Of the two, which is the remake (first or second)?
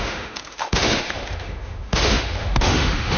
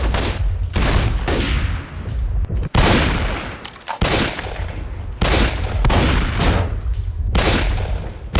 first